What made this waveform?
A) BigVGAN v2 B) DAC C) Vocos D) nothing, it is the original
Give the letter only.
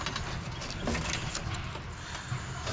D